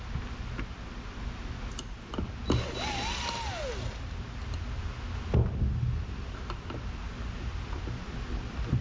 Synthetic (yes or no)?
no